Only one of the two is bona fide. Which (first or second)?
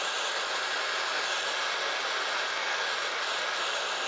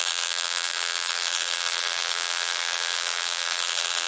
first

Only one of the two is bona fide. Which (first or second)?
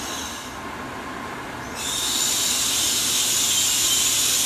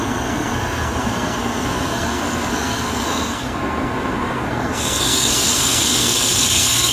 first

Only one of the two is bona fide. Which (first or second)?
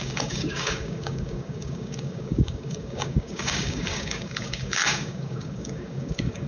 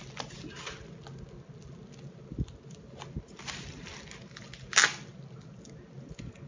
second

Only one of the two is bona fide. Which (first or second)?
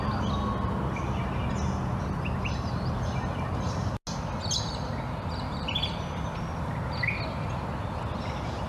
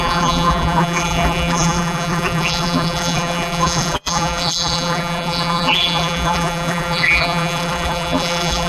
first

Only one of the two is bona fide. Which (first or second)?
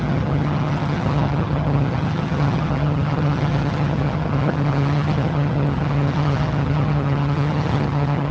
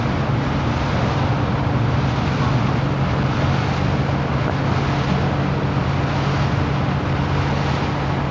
second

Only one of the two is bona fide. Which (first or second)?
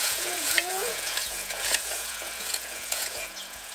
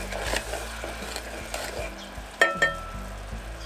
second